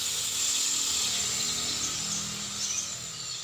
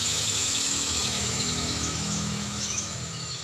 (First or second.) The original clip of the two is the first